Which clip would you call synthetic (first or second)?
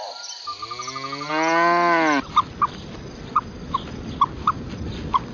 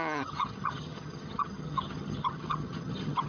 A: second